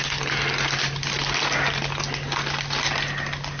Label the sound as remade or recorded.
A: recorded